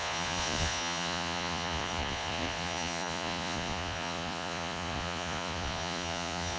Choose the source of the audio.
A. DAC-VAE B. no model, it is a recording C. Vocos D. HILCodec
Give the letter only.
C